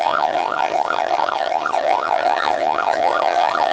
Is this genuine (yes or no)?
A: no